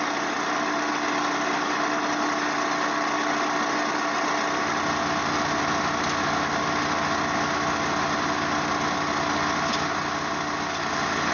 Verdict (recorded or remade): recorded